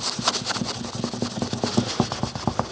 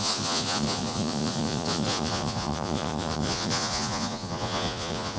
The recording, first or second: first